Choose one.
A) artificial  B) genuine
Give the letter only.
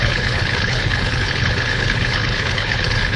A